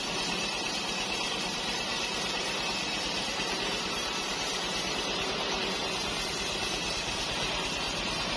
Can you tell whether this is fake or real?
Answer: fake